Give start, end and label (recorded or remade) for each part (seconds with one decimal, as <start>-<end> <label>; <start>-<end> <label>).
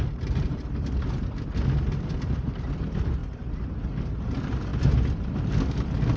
0.0-6.2 recorded